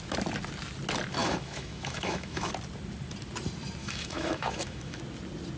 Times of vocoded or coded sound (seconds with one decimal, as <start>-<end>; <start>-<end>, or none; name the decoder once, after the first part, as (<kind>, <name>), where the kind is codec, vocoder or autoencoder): 1.2-2.5 (autoencoder, DAC-VAE); 3.8-5.0